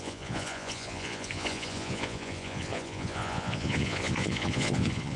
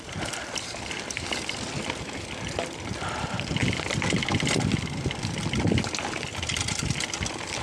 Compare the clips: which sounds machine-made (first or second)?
first